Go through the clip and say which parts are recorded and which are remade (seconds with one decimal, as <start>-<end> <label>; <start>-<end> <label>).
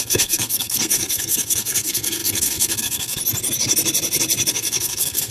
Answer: 0.0-3.2 remade; 3.2-4.5 recorded; 4.5-5.3 remade